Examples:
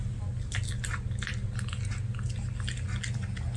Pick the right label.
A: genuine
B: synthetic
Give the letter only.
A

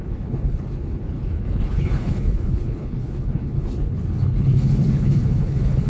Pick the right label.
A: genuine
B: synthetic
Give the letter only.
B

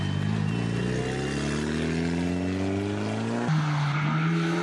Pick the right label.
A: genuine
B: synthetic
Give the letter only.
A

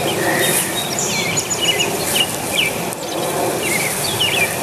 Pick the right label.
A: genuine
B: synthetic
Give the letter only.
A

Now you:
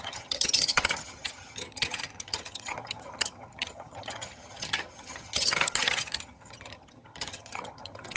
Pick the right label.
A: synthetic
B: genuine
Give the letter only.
A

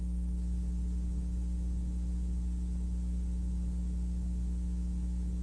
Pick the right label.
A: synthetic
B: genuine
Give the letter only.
B